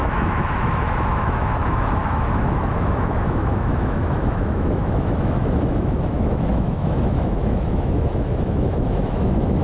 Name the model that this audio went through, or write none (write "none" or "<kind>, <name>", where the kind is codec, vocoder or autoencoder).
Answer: autoencoder, DAC-VAE